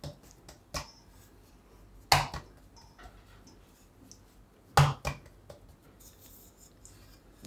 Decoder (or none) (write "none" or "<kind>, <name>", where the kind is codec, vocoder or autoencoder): none